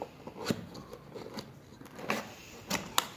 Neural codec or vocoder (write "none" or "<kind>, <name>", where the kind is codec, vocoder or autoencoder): none